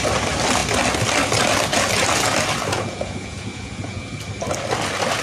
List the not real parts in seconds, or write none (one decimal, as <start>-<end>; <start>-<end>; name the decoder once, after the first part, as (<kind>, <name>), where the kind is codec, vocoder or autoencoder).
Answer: 2.7-4.2 (vocoder, Vocos)